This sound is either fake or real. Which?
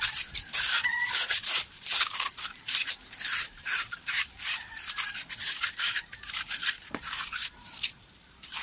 fake